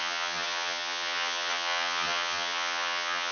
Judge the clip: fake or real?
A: fake